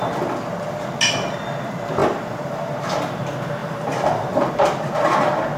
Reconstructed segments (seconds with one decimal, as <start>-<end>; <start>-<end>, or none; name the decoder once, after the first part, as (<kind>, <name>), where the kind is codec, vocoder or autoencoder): 2.0-2.9 (vocoder, BigVGAN v2); 3.6-4.9